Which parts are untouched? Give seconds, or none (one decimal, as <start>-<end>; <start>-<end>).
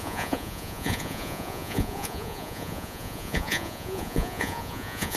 none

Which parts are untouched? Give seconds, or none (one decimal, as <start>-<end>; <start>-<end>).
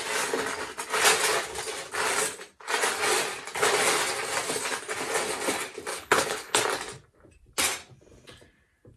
0.0-5.9; 6.6-9.0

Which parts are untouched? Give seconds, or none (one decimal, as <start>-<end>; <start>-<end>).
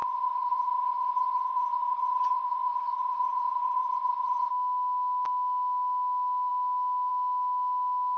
4.5-8.2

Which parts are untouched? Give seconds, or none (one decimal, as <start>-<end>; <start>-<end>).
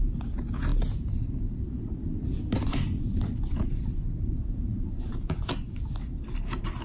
0.0-4.4; 5.5-6.8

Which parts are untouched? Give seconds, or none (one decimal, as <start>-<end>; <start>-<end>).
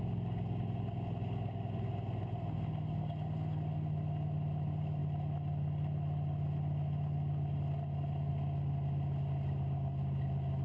0.0-10.6